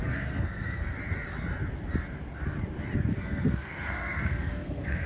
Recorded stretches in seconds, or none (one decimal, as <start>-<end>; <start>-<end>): 0.9-3.1